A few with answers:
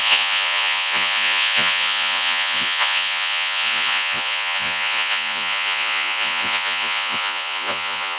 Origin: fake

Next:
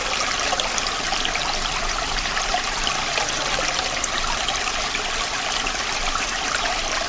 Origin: real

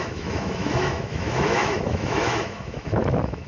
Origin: fake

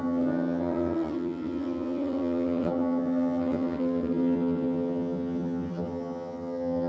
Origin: fake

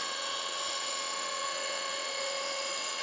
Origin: fake